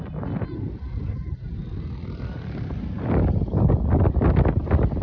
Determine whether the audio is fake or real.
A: real